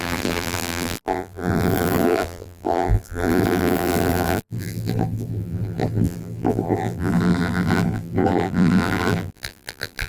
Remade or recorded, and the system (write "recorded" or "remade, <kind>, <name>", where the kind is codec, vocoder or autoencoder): remade, vocoder, BigVGAN v2